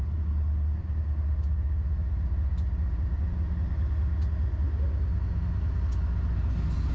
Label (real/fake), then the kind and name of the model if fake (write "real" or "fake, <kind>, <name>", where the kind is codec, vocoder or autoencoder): real